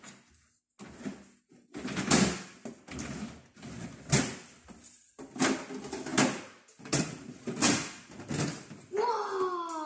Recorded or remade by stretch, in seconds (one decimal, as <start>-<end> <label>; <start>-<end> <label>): 0.0-9.9 recorded